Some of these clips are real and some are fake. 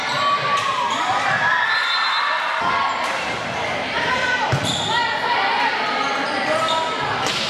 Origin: real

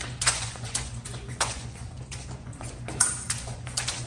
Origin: fake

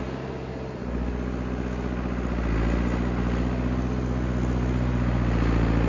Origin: real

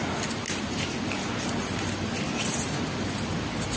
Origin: real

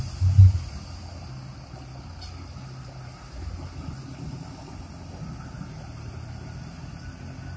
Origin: real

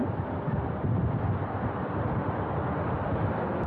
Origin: fake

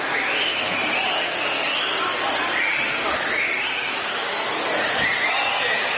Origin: real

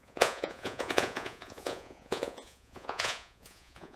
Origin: fake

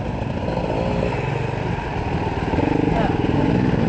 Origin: real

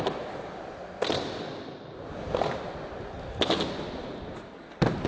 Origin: real